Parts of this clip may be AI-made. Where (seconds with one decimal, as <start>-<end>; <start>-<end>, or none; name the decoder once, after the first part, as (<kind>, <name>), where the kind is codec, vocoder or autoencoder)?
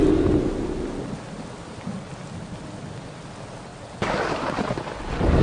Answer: none